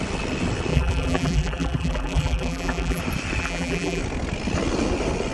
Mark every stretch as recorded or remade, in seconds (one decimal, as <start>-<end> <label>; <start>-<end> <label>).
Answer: 0.0-0.7 recorded; 0.7-3.0 remade; 3.0-3.4 recorded; 3.4-4.0 remade; 4.0-5.3 recorded